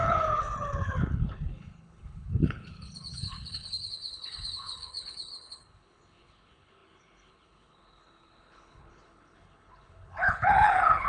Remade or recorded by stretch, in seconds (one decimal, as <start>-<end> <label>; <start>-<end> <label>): 0.0-11.1 remade